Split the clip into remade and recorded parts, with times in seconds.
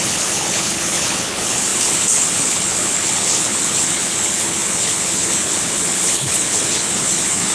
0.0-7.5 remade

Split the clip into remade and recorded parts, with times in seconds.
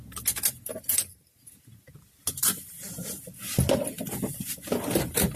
0.0-5.4 recorded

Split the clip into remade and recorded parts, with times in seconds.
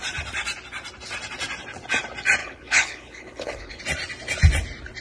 0.0-2.4 recorded; 2.4-3.8 remade; 3.8-5.0 recorded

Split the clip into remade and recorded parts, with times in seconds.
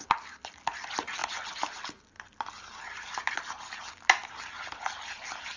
0.0-5.6 recorded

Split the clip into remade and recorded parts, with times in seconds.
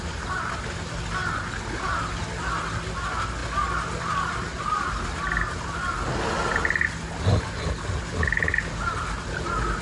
0.0-9.8 recorded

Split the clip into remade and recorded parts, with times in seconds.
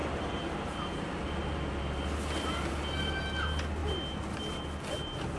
0.0-5.4 recorded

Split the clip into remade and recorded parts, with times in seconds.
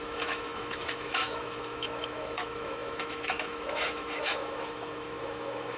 0.0-5.8 remade